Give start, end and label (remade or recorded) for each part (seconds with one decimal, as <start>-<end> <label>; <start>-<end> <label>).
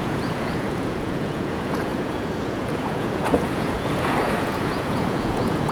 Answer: 0.0-5.7 remade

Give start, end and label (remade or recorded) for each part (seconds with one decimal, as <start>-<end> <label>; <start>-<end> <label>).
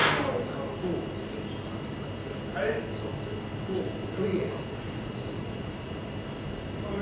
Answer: 0.0-4.3 recorded; 4.3-6.1 remade; 6.1-7.0 recorded